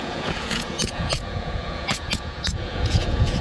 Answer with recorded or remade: remade